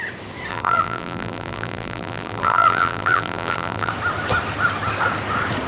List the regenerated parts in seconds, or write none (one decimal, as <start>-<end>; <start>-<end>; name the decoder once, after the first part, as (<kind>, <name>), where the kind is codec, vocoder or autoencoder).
0.5-3.9 (vocoder, BigVGAN v2)